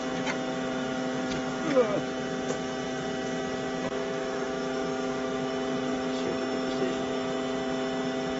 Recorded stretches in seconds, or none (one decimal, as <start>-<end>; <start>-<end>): 0.0-4.0; 5.5-8.4